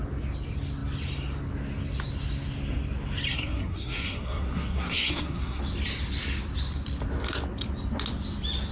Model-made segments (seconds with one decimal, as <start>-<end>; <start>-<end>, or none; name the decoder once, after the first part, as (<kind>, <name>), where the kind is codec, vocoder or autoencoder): 3.3-5.6 (codec, SNAC)